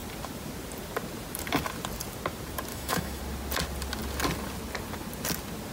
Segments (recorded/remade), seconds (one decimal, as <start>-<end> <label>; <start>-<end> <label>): 0.0-2.7 recorded; 2.7-3.2 remade; 3.2-5.7 recorded